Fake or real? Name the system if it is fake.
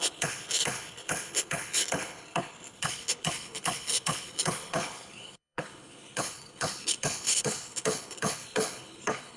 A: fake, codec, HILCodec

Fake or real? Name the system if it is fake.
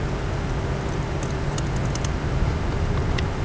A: real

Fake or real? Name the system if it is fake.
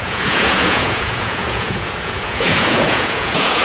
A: fake, vocoder, Vocos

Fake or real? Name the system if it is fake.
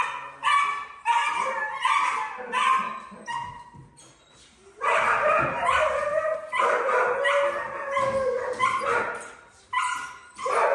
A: real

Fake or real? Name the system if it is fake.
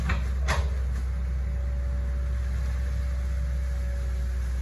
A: real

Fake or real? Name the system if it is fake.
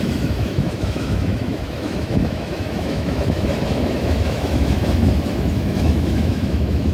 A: fake, autoencoder, DAC-VAE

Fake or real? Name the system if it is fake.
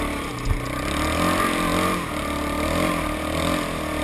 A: real